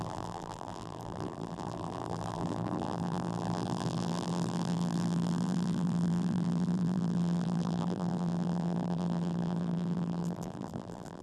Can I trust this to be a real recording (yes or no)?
no